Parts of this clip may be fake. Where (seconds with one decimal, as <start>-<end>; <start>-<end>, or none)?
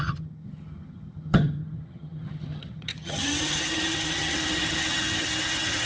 0.0-5.9